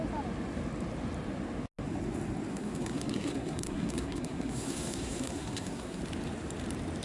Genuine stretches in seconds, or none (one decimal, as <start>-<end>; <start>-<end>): 0.0-2.5; 6.0-7.0